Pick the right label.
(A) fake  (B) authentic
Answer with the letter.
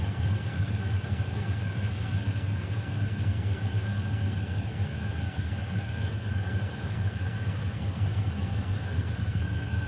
A